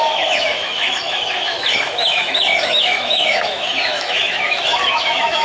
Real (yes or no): no